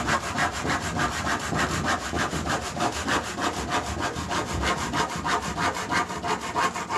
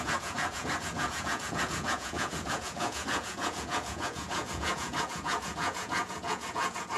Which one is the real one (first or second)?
first